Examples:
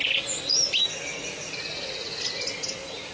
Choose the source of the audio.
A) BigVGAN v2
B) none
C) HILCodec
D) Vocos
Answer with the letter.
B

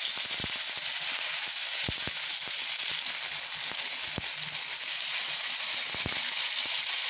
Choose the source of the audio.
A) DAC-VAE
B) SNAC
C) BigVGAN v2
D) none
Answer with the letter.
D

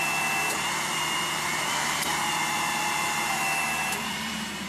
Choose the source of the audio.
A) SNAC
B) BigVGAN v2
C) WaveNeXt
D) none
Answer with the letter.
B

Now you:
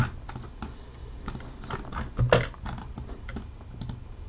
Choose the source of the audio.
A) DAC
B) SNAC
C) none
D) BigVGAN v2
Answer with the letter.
C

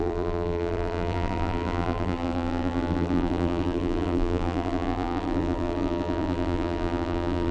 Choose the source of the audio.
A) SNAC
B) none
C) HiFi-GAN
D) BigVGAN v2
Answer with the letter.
D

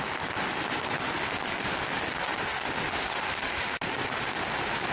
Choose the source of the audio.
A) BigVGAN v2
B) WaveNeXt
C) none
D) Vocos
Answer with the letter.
C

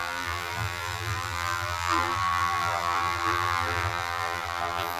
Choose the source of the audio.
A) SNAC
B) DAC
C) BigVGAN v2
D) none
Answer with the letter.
C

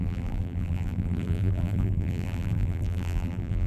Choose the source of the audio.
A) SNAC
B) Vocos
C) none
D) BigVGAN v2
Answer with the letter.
D